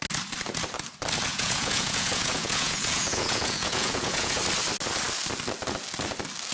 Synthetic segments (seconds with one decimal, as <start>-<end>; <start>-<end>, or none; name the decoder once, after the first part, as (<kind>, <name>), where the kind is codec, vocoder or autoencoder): 1.3-4.4 (vocoder, Vocos)